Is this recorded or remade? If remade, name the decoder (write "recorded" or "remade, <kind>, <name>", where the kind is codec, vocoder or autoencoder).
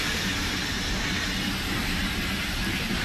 recorded